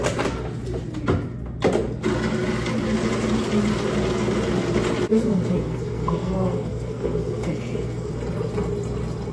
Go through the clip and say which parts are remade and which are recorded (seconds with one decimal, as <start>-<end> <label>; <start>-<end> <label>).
0.0-5.1 recorded; 5.1-8.1 remade; 8.1-9.3 recorded